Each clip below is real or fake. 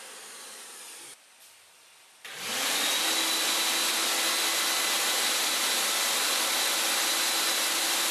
real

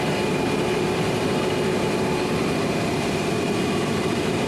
fake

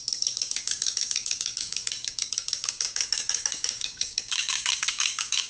fake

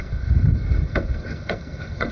fake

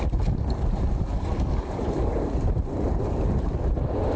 fake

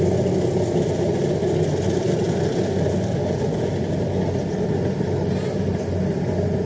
real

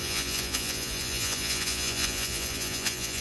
fake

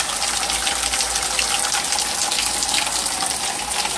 real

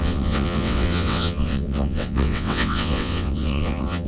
fake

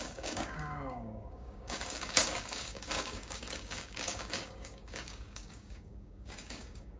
fake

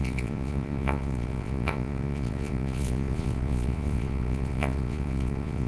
fake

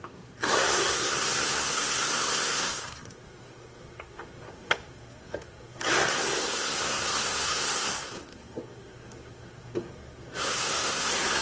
fake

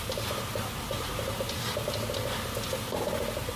real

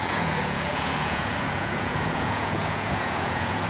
fake